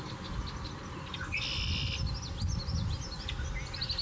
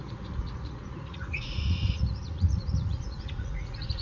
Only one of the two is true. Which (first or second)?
first